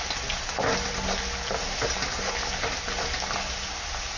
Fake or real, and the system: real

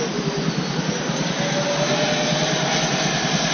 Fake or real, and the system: real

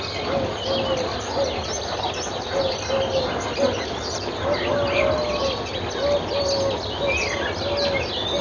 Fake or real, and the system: real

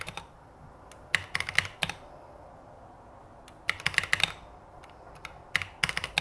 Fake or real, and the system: real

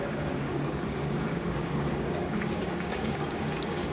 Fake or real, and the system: fake, codec, DAC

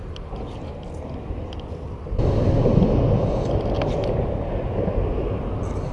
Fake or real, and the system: real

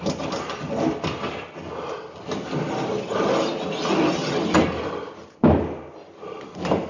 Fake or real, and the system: real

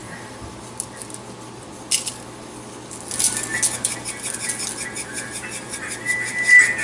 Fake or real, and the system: real